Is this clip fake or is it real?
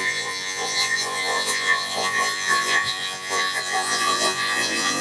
fake